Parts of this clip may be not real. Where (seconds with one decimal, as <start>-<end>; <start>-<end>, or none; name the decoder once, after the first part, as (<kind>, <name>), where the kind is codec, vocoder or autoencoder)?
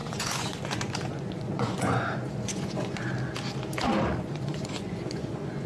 0.0-3.1 (vocoder, Vocos); 4.0-5.7